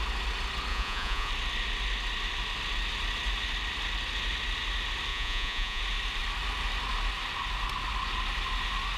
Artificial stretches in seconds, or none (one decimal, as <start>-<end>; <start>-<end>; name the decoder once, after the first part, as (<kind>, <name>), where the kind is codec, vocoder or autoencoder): 0.7-1.3 (vocoder, Vocos); 5.1-5.8